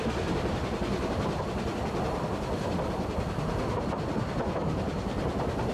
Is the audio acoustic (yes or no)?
yes